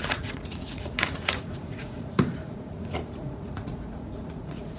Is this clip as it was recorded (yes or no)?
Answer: no